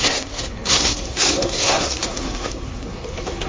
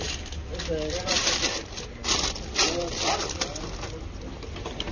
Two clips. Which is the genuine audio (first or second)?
second